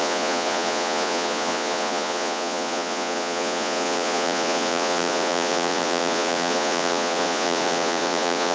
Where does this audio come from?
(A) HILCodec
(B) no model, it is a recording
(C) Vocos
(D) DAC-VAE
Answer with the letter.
C